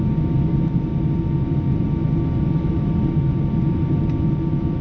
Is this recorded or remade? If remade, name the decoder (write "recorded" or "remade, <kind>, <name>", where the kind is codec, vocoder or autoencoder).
recorded